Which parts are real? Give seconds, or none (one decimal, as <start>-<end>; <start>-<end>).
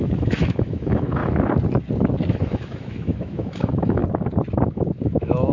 1.2-2.3; 4.0-4.6